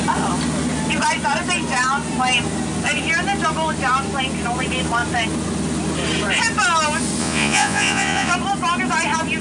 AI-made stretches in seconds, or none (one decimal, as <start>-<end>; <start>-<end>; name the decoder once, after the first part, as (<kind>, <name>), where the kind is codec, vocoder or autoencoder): 7.2-8.3 (vocoder, Vocos)